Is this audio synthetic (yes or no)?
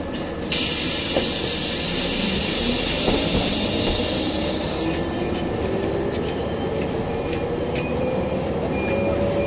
no